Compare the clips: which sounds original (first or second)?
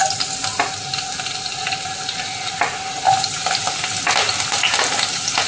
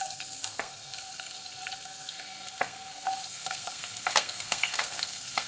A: first